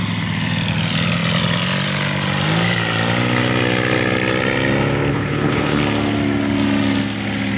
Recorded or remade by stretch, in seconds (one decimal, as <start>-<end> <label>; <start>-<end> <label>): 0.0-5.1 recorded; 5.1-5.8 remade; 5.8-7.6 recorded